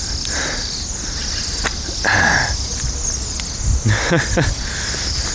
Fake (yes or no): no